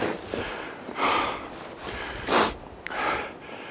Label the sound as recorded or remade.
recorded